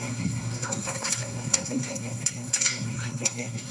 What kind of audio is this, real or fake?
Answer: fake